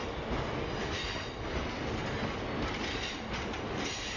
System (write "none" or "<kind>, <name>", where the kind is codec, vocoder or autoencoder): none